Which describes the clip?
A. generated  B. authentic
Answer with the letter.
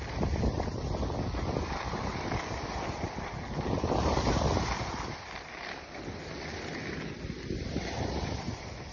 B